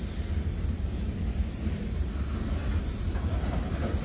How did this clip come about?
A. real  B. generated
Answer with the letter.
A